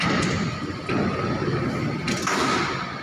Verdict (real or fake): real